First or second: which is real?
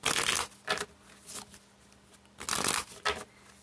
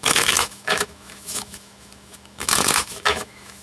first